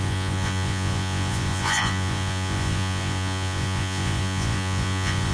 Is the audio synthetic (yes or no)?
yes